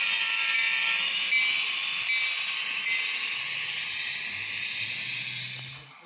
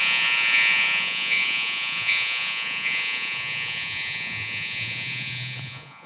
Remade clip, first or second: second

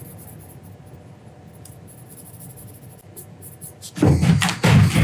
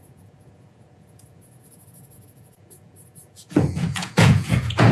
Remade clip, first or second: second